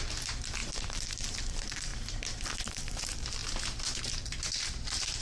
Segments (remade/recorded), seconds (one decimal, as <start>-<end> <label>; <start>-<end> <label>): 0.0-3.4 remade; 3.4-4.0 recorded; 4.0-5.2 remade